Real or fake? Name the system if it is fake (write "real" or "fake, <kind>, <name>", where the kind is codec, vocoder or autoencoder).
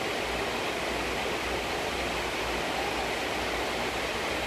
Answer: real